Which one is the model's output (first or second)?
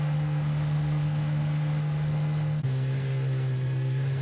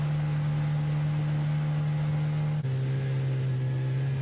first